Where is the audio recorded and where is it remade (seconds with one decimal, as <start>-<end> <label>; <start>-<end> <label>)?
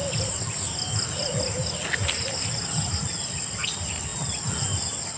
0.0-5.2 recorded